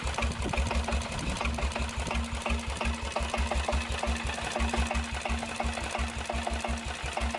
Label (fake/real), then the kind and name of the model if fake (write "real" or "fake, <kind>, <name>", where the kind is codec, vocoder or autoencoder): real